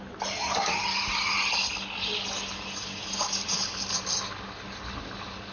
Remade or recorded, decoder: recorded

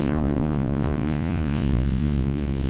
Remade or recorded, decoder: remade, vocoder, Vocos